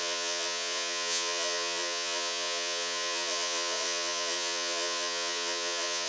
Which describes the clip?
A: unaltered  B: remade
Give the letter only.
B